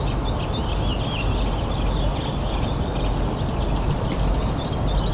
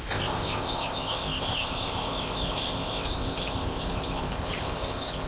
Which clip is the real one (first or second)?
first